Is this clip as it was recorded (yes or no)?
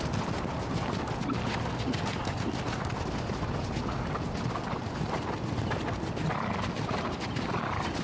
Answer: yes